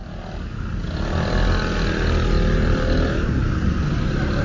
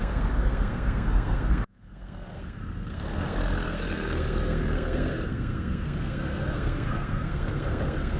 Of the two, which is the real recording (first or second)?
first